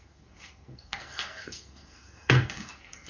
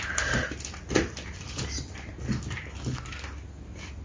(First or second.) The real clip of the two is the second